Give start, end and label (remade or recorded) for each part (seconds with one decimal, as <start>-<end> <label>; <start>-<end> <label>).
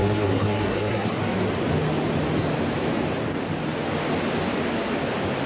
0.0-1.2 remade; 1.2-5.5 recorded